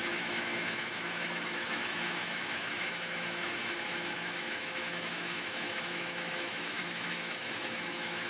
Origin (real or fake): fake